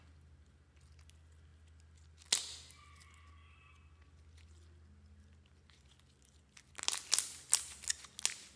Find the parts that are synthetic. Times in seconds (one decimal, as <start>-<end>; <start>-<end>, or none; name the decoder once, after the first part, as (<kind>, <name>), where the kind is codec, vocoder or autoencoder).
none